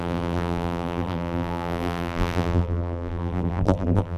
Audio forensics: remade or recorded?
remade